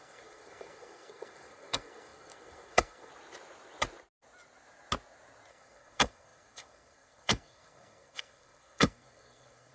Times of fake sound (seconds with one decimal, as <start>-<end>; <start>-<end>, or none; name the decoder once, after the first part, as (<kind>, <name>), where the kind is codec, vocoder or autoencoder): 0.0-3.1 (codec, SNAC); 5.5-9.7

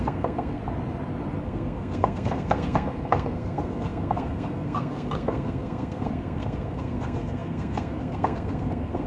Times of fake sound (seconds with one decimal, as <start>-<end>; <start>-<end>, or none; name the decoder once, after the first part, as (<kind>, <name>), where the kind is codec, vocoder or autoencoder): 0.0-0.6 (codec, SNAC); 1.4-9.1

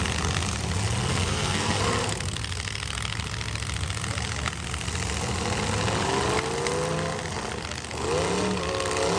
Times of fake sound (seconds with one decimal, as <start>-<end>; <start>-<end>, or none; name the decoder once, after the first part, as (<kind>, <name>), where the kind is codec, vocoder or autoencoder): 1.1-1.8 (codec, SNAC)

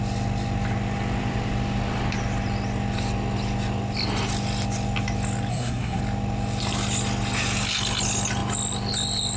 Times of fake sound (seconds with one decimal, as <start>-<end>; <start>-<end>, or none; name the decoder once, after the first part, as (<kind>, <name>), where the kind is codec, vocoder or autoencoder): 5.5-6.0 (codec, SNAC)

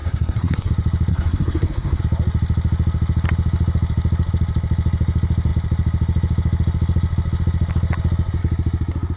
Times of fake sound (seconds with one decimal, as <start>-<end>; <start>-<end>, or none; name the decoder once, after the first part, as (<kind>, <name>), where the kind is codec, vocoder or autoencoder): 0.0-0.7 (codec, SNAC); 1.1-2.0

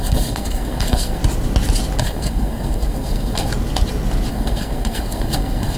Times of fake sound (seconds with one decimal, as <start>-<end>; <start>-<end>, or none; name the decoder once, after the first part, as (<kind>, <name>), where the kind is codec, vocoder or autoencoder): 0.0-1.2 (codec, SNAC); 2.0-3.5; 4.3-5.8

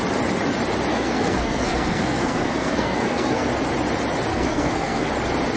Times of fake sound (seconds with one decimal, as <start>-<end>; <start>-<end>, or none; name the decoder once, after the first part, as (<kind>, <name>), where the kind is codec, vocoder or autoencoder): 0.9-3.5 (codec, SNAC); 4.3-5.1